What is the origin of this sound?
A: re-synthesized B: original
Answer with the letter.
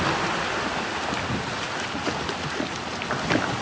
B